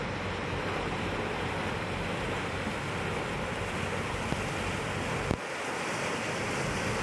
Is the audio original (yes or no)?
yes